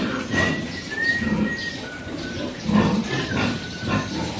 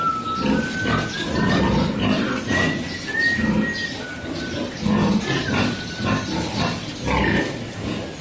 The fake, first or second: first